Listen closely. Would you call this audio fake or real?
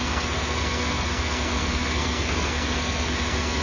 fake